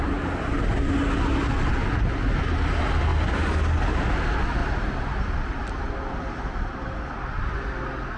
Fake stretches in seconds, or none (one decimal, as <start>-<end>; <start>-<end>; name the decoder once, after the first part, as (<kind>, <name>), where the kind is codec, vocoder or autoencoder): none